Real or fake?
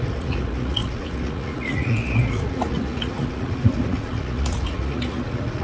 fake